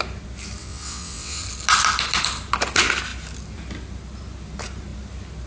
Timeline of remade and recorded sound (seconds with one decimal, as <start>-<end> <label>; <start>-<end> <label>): 0.0-0.6 recorded; 0.6-1.4 remade; 1.4-5.5 recorded